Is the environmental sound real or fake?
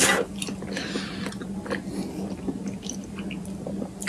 real